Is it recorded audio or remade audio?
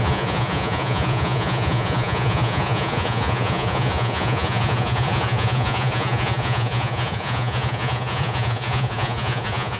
remade